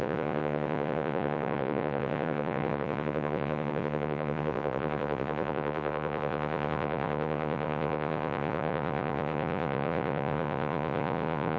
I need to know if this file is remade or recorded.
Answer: remade